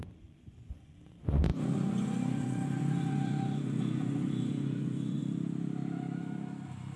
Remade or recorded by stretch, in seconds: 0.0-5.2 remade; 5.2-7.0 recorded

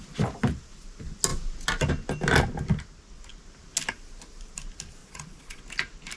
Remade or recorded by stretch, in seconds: 0.0-5.0 recorded; 5.0-5.6 remade; 5.6-6.2 recorded

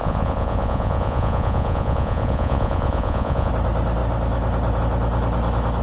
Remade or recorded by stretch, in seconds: 0.0-3.5 remade; 3.5-5.8 recorded

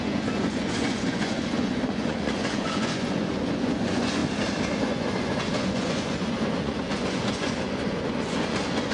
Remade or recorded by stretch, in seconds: 0.0-4.2 remade; 4.2-4.8 recorded; 4.8-8.9 remade

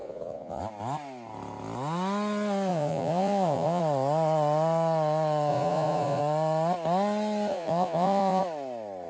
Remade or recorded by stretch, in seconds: 0.0-0.6 remade; 0.6-2.7 recorded; 2.7-3.8 remade; 3.8-5.5 recorded; 5.5-6.2 remade; 6.2-7.5 recorded; 7.5-8.4 remade; 8.4-9.1 recorded

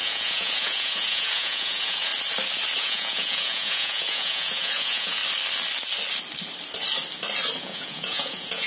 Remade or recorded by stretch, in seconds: 0.0-2.1 remade; 2.1-2.8 recorded; 2.8-5.2 remade; 5.2-7.6 recorded; 7.6-8.7 remade

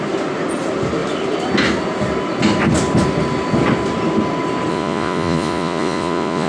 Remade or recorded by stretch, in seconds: 0.0-4.7 recorded; 4.7-6.5 remade